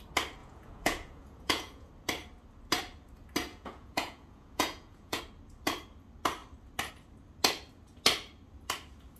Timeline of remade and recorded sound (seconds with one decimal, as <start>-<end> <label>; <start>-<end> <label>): 0.0-0.4 recorded; 0.4-1.9 remade; 1.9-3.5 recorded; 3.5-5.2 remade; 5.2-9.2 recorded